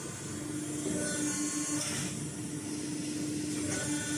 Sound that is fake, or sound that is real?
real